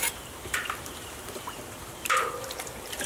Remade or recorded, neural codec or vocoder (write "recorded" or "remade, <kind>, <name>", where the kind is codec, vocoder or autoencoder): remade, vocoder, BigVGAN v2